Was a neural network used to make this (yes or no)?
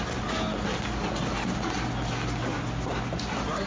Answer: no